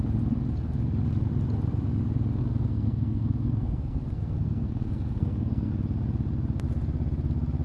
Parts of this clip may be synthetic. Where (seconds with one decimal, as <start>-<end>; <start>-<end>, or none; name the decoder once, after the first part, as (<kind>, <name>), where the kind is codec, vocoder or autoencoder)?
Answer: 2.4-5.7 (codec, SNAC)